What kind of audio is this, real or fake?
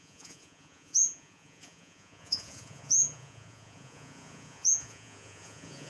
fake